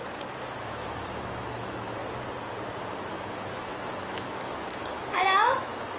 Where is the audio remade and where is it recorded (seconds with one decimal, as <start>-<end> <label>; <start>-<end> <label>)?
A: 0.0-0.6 recorded; 0.6-2.0 remade; 2.0-2.9 recorded; 2.9-6.0 remade

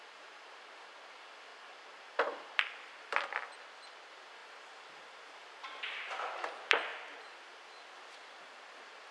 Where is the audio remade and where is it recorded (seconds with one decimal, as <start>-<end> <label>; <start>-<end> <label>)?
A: 0.0-1.5 recorded; 1.5-3.2 remade; 3.2-4.4 recorded; 4.4-5.7 remade; 5.7-9.1 recorded

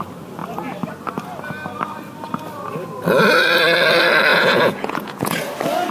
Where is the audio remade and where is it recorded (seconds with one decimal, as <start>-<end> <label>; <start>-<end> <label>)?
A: 0.0-4.3 recorded; 4.3-5.4 remade; 5.4-5.9 recorded